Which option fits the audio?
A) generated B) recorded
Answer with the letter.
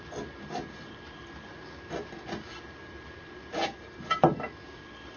B